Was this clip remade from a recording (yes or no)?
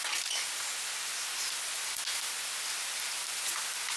no